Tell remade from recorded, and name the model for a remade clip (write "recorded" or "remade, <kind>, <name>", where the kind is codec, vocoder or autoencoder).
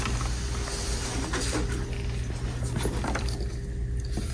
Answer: recorded